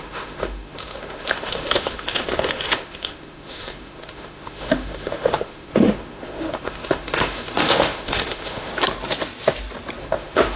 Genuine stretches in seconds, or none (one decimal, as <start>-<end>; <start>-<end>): 8.7-10.0